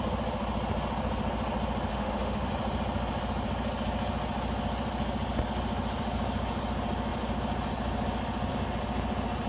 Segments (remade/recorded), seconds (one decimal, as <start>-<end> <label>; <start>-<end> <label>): 0.0-1.9 recorded; 1.9-2.5 remade; 2.5-9.5 recorded